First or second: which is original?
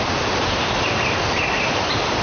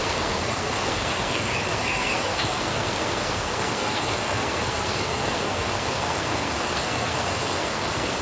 first